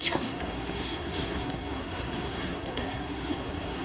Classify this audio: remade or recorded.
remade